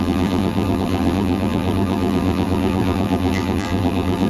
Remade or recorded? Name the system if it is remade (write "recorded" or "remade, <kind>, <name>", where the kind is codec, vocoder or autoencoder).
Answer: remade, vocoder, BigVGAN v2